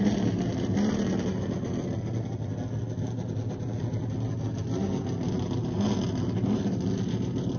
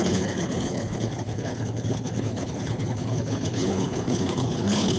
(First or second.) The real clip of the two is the first